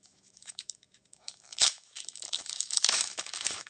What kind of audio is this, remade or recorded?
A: remade